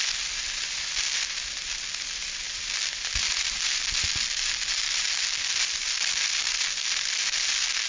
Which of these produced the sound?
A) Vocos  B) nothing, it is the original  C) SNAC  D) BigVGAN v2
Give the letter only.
B